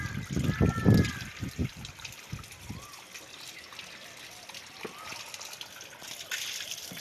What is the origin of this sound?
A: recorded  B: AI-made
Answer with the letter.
A